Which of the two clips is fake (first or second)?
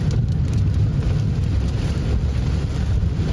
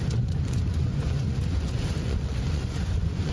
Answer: second